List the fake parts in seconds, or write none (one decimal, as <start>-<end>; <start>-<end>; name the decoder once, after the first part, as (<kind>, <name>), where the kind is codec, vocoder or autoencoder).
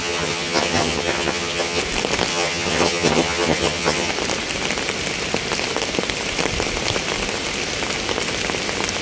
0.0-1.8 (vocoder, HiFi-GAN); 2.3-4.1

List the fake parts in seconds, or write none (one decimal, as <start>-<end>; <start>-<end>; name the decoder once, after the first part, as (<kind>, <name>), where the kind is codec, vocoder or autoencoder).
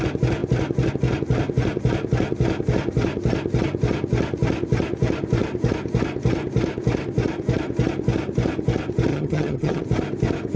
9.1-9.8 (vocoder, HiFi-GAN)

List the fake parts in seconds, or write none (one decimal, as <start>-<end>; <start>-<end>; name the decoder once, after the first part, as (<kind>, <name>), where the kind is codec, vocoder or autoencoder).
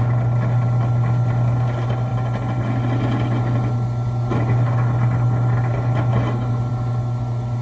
none